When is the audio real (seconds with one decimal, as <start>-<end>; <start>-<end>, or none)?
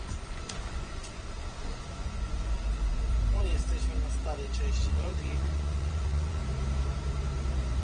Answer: 3.6-4.8; 6.4-7.8